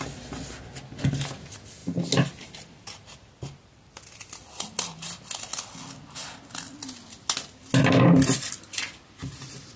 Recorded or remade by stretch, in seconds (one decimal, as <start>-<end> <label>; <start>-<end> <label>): 0.0-9.8 recorded